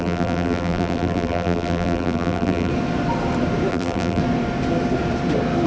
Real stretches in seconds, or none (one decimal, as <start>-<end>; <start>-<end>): 2.7-3.7; 4.2-5.7